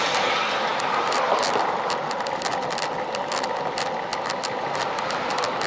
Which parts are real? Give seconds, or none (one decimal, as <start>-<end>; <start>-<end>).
0.0-5.7